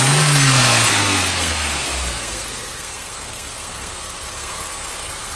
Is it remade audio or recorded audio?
remade